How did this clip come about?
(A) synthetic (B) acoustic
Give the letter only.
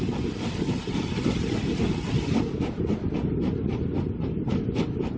B